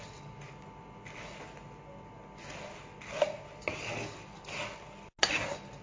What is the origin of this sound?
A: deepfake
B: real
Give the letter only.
B